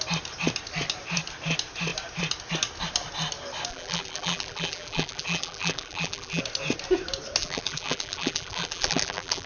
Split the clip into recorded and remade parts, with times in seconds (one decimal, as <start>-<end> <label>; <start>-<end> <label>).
0.0-3.7 recorded; 3.7-6.4 remade; 6.4-7.4 recorded; 7.4-9.5 remade